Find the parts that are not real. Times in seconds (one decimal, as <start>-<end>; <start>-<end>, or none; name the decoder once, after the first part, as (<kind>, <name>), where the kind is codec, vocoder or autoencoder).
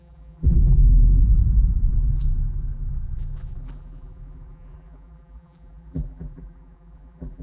0.0-1.2 (vocoder, BigVGAN v2); 1.9-7.4